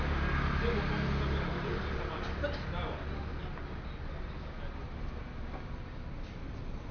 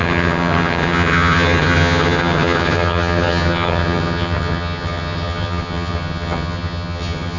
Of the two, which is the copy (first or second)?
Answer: second